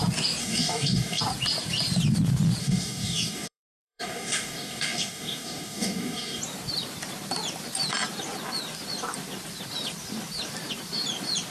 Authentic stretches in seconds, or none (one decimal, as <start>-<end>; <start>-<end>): 0.0-0.4; 1.2-2.6; 6.4-11.5